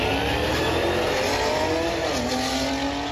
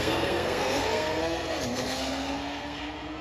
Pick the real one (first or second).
first